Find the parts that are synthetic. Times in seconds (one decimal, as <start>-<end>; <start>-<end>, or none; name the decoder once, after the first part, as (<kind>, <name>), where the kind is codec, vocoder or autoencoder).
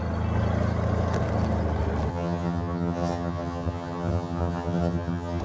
2.1-5.4 (vocoder, HiFi-GAN)